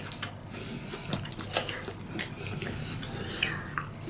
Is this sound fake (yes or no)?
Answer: no